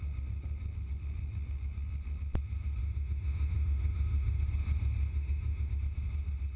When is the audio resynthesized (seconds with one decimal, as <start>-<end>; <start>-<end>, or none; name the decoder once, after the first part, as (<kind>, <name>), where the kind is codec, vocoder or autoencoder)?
2.8-4.4 (autoencoder, DAC-VAE); 5.1-5.8